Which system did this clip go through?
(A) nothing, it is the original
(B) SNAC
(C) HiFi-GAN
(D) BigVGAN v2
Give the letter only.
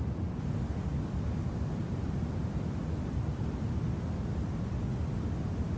A